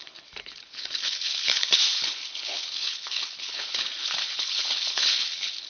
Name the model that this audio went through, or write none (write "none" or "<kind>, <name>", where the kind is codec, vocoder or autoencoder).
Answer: codec, HILCodec